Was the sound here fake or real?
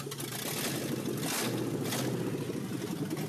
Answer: real